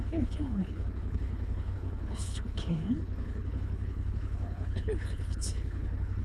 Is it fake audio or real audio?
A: fake